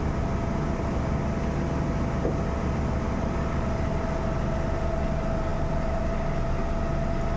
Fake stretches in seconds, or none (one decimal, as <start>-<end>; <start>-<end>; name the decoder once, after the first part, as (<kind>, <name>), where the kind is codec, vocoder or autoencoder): none